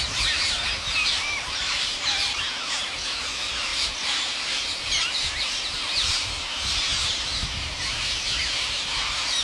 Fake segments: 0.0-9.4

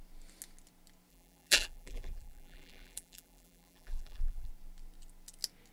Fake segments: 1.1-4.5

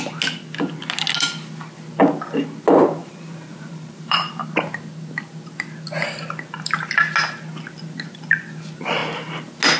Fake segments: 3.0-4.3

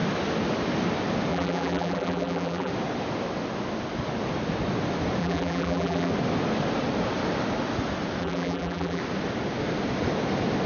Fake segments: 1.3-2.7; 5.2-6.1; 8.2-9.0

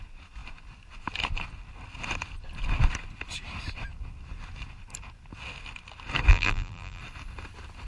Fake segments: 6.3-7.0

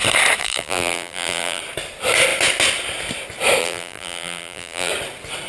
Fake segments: 0.4-1.6; 3.6-4.9

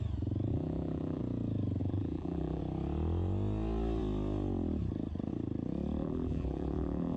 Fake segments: 0.5-1.2; 1.8-2.6; 6.0-7.2

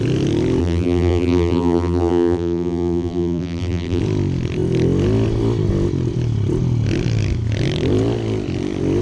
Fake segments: 0.6-4.0